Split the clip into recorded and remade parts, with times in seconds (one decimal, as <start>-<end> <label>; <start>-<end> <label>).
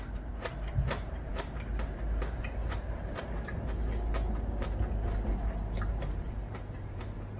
0.0-1.7 remade; 1.7-5.9 recorded; 5.9-7.4 remade